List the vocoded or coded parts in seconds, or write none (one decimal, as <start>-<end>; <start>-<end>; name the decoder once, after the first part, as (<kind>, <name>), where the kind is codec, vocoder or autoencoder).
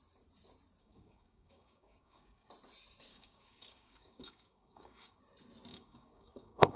0.8-2.5 (codec, DAC); 3.1-5.2; 5.7-6.8